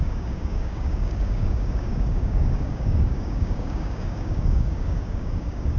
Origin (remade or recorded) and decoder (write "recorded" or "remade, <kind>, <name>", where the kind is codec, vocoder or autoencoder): remade, codec, DAC